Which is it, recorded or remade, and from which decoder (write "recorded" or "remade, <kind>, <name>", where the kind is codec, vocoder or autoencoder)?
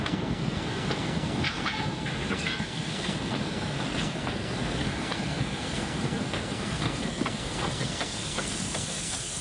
remade, codec, SNAC